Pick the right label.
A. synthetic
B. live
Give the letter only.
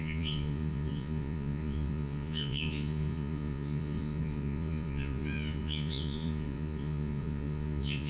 A